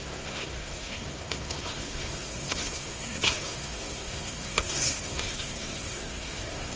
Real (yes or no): no